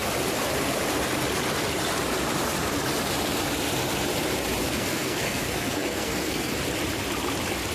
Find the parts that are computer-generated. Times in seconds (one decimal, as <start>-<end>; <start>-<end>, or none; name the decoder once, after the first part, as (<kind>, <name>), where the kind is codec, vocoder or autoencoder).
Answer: 4.6-6.5 (codec, SNAC)